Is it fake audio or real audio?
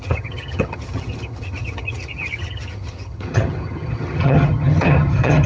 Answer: fake